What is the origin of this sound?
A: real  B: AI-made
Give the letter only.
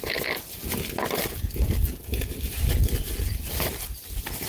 A